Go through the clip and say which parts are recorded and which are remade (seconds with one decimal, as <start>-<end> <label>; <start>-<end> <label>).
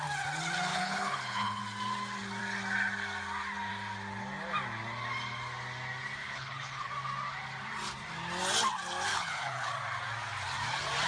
0.0-0.7 recorded; 0.7-1.6 remade; 1.6-6.2 recorded; 6.2-6.9 remade; 6.9-9.1 recorded; 9.1-9.7 remade; 9.7-11.1 recorded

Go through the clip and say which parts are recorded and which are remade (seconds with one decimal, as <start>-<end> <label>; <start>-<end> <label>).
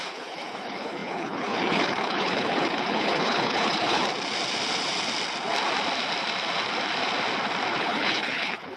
0.0-4.0 remade; 4.0-7.8 recorded; 7.8-8.8 remade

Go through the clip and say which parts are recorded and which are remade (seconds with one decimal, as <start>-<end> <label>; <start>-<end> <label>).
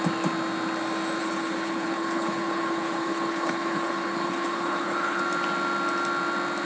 0.0-1.2 recorded; 1.2-5.2 remade; 5.2-6.7 recorded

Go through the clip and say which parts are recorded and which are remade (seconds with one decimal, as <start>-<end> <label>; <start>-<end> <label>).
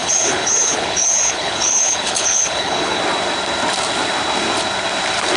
0.0-3.0 remade; 3.0-5.4 recorded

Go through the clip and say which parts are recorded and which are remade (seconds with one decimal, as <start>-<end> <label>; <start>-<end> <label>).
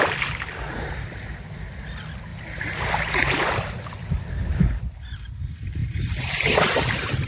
0.0-4.3 recorded; 4.3-4.8 remade; 4.8-7.3 recorded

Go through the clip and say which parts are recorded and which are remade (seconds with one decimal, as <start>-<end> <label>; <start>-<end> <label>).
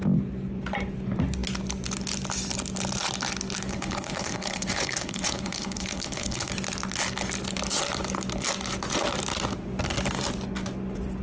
0.0-3.7 recorded; 3.7-6.5 remade; 6.5-11.2 recorded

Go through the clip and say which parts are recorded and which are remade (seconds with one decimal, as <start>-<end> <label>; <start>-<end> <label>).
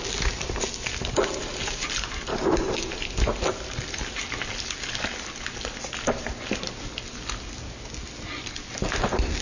0.0-9.4 recorded